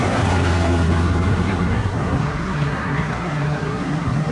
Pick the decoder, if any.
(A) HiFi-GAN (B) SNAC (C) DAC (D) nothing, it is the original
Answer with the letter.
B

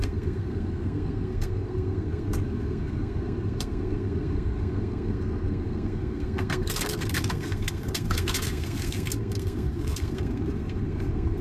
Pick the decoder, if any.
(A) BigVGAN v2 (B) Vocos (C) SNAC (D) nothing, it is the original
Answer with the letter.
C